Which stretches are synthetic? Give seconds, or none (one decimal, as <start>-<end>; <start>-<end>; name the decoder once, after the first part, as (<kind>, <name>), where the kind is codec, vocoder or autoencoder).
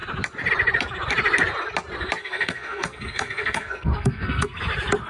2.2-4.6 (codec, SNAC)